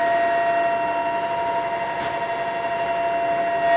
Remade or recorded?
recorded